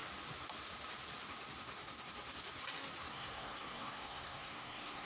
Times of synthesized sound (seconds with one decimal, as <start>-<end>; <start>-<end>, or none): 3.1-5.1